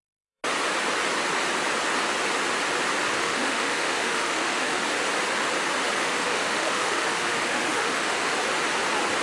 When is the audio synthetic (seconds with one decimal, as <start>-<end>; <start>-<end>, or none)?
0.0-0.4; 3.2-4.8; 6.0-8.3